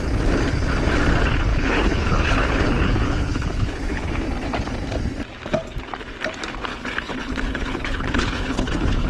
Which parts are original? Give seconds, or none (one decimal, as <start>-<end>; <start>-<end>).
0.0-1.5; 4.1-6.7